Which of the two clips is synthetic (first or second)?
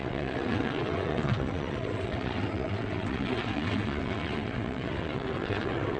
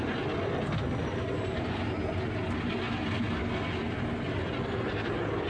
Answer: first